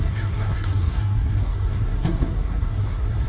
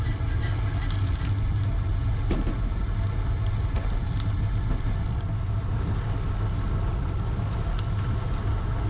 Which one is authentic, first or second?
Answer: second